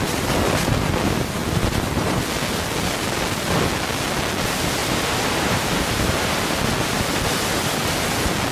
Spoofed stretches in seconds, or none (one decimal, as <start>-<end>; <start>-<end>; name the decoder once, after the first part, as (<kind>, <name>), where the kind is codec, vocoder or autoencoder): none